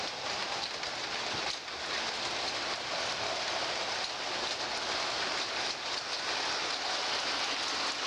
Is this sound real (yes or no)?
yes